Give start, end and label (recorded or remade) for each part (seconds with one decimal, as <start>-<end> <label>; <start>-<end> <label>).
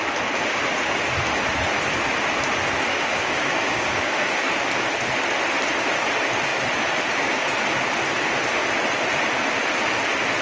0.0-2.9 recorded; 2.9-4.5 remade; 4.5-10.4 recorded